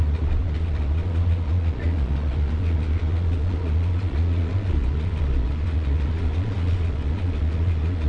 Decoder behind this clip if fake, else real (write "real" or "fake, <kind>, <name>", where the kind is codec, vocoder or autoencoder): fake, vocoder, Vocos